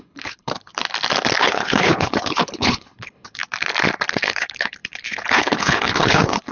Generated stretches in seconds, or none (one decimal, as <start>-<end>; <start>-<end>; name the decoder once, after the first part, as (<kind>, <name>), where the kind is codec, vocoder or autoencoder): 0.0-0.7 (codec, HILCodec); 1.4-3.4; 4.1-6.5